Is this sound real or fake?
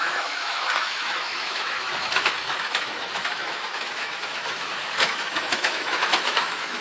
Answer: fake